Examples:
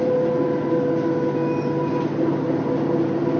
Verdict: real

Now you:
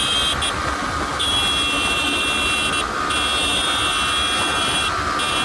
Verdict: real